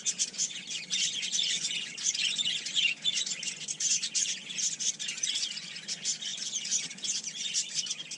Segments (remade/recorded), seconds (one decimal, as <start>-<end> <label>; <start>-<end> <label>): 0.0-8.2 remade